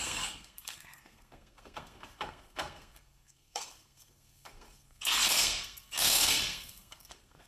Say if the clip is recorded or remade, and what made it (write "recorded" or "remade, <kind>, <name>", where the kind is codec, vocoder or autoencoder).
remade, codec, SNAC